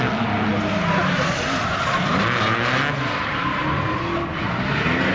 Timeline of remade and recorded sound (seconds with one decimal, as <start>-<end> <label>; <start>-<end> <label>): 0.0-5.1 recorded